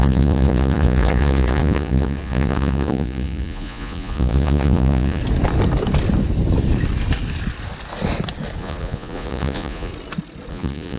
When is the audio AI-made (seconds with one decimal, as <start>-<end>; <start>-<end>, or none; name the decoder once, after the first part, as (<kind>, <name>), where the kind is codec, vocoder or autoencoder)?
0.0-5.2 (vocoder, Vocos); 8.6-9.9; 10.5-11.0